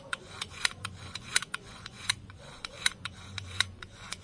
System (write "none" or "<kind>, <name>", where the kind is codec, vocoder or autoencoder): vocoder, Vocos